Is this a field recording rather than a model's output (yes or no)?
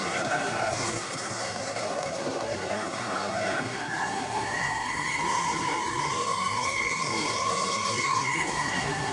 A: no